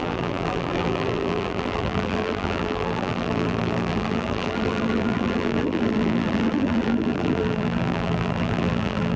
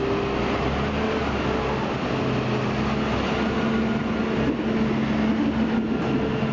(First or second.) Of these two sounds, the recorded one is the second